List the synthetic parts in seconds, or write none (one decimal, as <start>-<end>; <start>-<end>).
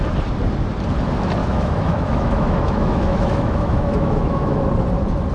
1.4-4.6